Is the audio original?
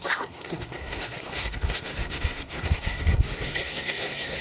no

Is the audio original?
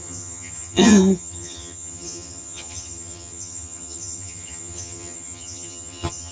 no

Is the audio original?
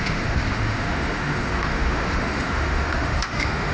no